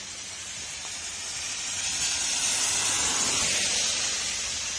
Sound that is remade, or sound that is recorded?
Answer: recorded